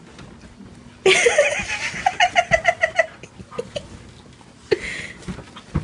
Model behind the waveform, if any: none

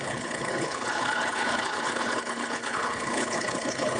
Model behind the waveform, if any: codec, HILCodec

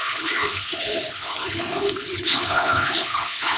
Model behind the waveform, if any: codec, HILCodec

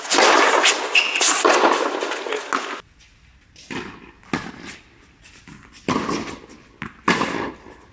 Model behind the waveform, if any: none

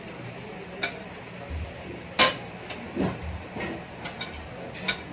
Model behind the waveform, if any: none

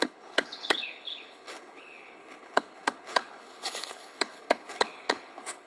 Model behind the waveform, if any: codec, HILCodec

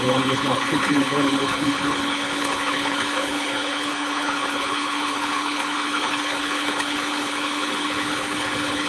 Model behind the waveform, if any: codec, HILCodec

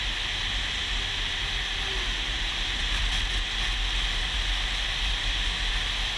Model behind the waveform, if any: none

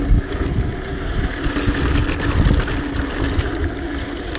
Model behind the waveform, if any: none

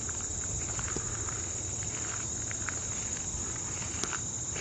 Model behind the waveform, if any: none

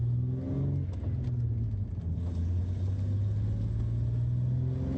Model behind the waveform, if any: none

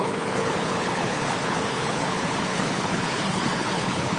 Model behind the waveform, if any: codec, HILCodec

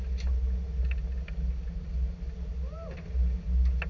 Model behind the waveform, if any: none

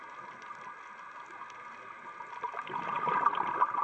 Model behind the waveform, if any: none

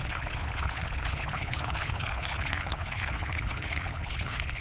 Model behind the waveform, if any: codec, HILCodec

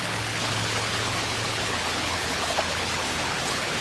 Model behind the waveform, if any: codec, HILCodec